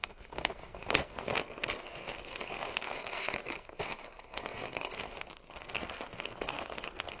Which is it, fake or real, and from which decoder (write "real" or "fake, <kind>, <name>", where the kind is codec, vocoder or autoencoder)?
fake, codec, SNAC